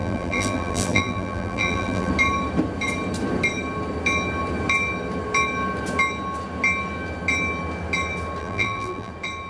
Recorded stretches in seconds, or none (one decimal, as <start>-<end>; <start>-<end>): 2.1-8.4; 9.1-9.5